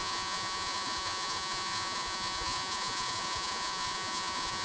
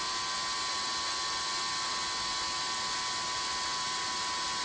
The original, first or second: second